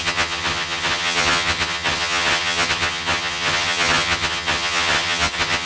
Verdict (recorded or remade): remade